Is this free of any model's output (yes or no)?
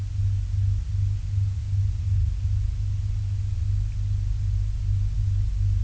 yes